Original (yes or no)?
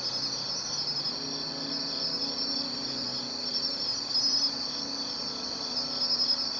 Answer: yes